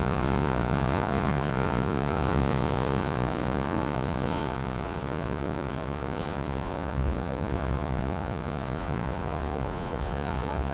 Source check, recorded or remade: remade